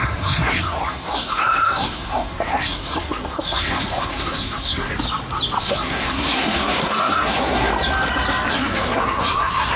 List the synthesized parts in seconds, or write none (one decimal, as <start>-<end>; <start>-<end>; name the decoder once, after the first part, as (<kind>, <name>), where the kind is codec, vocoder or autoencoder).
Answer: 0.0-4.9 (codec, SNAC); 5.6-7.7; 8.5-9.8